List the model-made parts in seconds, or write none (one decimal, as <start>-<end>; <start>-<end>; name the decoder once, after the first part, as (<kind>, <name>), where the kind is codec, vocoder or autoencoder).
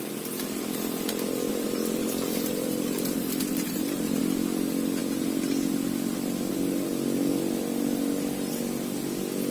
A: 1.5-4.2 (vocoder, BigVGAN v2)